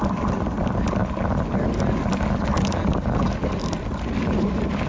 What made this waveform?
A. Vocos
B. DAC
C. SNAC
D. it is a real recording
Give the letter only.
D